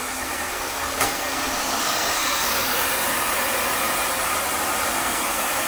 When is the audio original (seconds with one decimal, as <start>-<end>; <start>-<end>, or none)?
2.7-4.9